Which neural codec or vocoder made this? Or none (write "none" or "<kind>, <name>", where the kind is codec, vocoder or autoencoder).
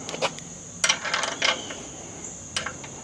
none